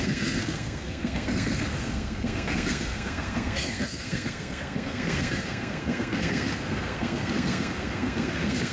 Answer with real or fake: fake